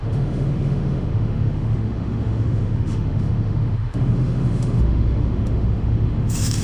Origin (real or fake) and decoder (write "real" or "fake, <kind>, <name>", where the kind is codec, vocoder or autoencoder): fake, autoencoder, DAC-VAE